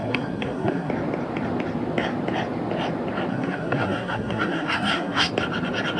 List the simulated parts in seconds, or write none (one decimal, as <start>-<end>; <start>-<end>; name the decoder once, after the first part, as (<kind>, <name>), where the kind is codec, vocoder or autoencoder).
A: 0.0-0.9 (codec, SNAC); 3.3-5.3